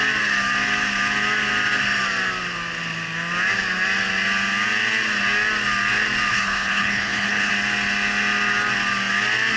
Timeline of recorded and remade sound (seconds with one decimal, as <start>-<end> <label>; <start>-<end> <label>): 0.0-6.3 recorded; 6.3-7.5 remade; 7.5-9.6 recorded